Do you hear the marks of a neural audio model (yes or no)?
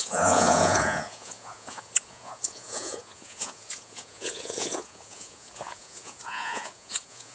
yes